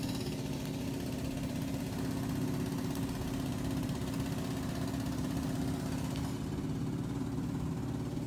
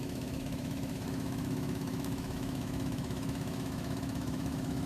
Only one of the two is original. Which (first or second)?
first